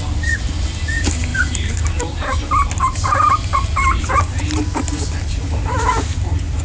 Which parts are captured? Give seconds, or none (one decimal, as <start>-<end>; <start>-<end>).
0.0-1.3; 2.0-2.8; 4.8-6.6